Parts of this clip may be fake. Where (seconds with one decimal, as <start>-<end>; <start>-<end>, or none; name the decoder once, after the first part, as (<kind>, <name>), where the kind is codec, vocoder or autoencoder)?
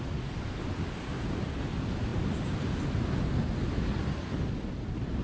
none